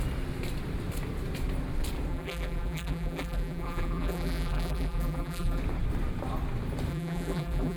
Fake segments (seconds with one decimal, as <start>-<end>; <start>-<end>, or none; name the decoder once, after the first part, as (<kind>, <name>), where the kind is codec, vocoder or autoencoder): 2.1-5.6 (vocoder, BigVGAN v2); 6.9-7.8